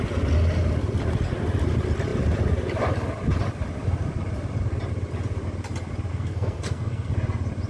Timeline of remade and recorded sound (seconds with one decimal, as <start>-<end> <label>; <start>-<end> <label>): 0.0-6.1 recorded; 6.1-7.1 remade; 7.1-7.7 recorded